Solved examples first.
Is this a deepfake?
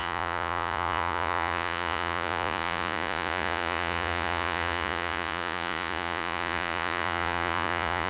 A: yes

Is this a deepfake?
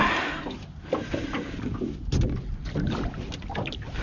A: no